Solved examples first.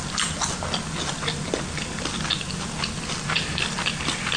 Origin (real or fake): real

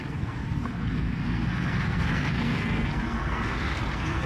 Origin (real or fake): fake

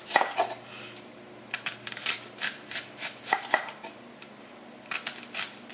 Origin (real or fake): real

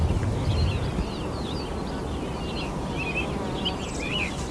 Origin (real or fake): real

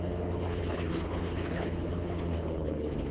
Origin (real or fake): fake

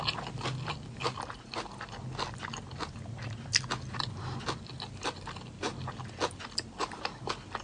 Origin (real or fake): real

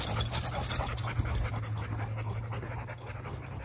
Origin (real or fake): real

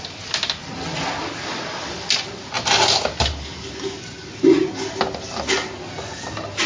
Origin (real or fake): real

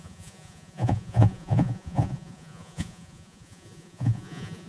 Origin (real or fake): fake